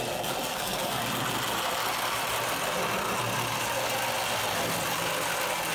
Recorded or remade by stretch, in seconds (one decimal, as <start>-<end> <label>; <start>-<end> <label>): 0.0-0.5 recorded; 0.5-1.0 remade; 1.0-5.7 recorded